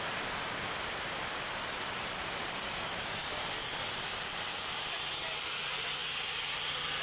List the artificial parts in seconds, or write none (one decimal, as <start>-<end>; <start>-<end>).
none